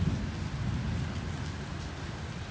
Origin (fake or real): real